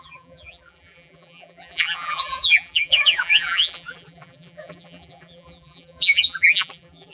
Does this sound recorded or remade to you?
remade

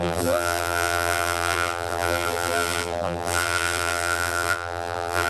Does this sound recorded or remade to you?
remade